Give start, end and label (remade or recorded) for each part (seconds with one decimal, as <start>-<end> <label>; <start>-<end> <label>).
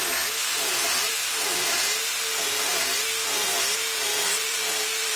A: 0.0-4.1 recorded; 4.1-5.2 remade